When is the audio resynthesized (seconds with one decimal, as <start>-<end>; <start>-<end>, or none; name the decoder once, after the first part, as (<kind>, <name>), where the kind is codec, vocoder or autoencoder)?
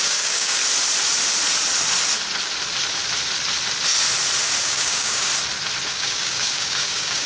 0.0-0.6 (codec, DAC); 4.6-5.3; 5.9-7.3